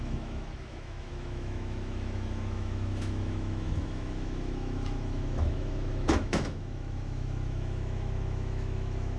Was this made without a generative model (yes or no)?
no